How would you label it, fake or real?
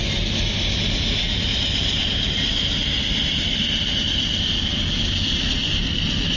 real